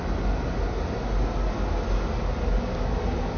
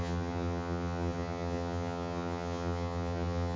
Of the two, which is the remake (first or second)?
second